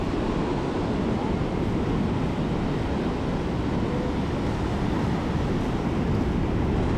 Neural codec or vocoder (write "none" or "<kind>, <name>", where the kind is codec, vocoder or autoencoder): none